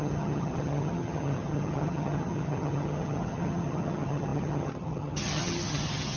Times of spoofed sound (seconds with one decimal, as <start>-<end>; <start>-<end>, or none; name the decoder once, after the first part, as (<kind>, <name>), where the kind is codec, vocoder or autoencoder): 0.0-6.2 (vocoder, HiFi-GAN)